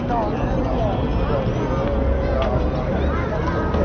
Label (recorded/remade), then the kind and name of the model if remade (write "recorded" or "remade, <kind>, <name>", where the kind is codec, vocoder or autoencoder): recorded